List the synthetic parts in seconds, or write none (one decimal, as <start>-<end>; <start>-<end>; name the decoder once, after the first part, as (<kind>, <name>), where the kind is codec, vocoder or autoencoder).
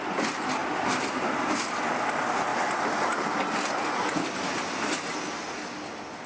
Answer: none